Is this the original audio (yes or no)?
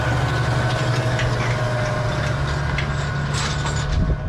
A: yes